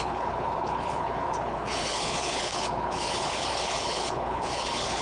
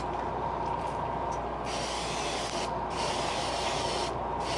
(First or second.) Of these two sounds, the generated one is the first